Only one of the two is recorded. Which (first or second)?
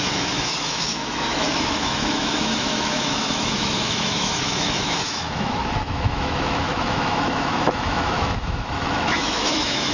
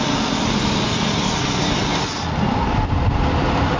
second